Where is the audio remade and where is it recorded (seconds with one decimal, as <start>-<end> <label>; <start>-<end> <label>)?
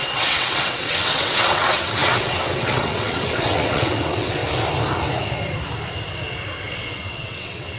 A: 0.0-4.4 remade; 4.4-6.7 recorded; 6.7-7.8 remade